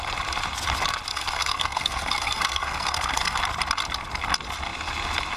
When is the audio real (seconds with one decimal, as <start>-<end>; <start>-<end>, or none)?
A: 0.0-1.1; 3.4-5.4